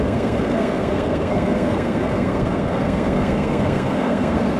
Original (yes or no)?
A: no